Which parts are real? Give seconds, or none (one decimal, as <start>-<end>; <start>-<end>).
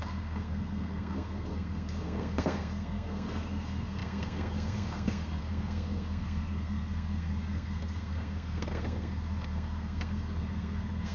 none